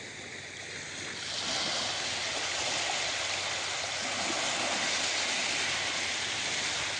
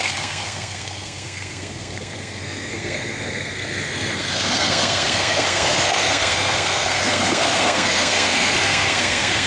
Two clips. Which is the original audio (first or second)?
first